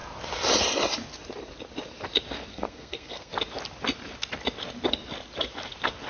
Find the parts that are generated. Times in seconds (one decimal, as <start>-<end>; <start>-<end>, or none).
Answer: 2.5-3.3